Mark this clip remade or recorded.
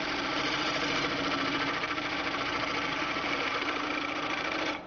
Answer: remade